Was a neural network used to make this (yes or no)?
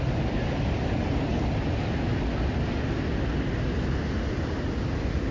no